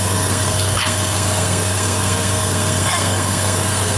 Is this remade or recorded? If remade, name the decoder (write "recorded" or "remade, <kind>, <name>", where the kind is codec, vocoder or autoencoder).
remade, codec, SNAC